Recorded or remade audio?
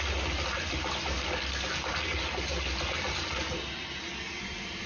recorded